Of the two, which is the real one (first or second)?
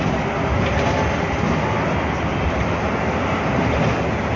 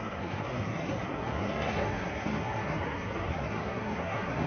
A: first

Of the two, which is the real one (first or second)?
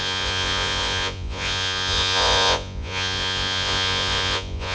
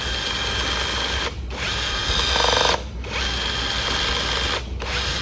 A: second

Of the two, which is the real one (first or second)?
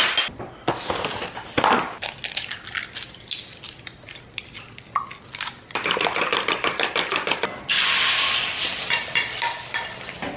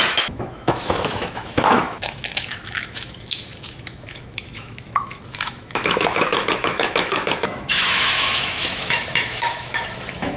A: first